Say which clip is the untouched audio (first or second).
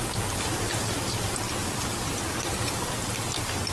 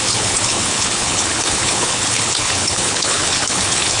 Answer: first